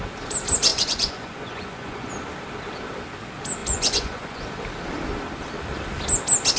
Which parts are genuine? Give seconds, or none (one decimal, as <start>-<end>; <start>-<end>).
0.0-0.7; 2.1-3.6; 4.4-6.6